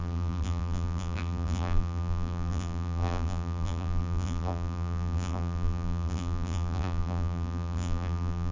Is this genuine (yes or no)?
no